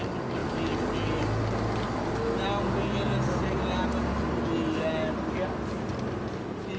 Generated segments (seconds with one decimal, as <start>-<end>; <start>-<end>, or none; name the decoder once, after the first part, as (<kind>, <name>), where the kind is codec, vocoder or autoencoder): none